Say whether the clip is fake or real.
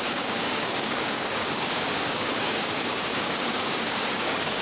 fake